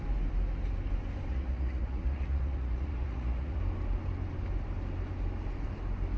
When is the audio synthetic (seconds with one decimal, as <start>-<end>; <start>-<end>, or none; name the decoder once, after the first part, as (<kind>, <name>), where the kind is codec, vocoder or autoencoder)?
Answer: 1.3-3.6 (vocoder, Vocos)